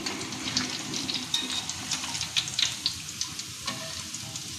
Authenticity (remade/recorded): recorded